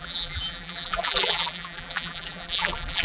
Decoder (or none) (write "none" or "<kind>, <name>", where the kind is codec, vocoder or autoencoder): vocoder, BigVGAN v2